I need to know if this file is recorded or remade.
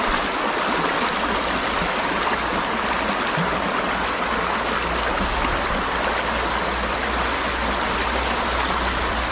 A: recorded